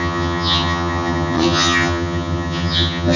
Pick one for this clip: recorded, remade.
remade